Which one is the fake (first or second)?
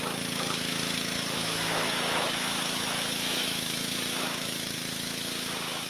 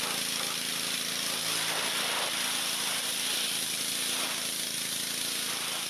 first